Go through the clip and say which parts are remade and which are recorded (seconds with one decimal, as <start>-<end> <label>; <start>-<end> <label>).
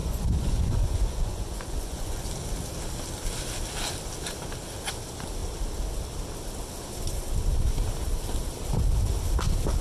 0.0-2.3 remade; 2.3-9.8 recorded